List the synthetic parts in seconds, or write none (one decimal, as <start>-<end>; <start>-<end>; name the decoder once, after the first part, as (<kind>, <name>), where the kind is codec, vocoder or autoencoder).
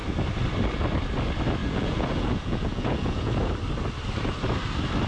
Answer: 1.6-3.3 (vocoder, Vocos)